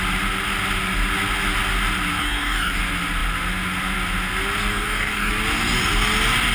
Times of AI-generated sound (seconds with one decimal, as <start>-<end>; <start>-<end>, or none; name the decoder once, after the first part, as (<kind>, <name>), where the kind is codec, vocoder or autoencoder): 2.2-2.8 (codec, DAC); 4.7-5.3